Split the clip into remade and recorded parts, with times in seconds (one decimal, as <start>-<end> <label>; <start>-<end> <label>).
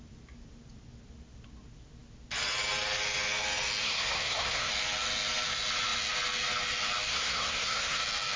0.0-3.8 recorded; 3.8-4.7 remade; 4.7-7.1 recorded; 7.1-8.0 remade; 8.0-8.4 recorded